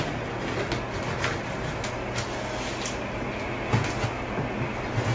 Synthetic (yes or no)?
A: no